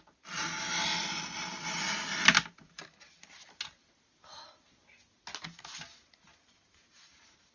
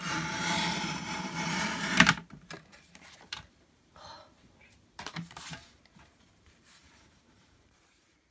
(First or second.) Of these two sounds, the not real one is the second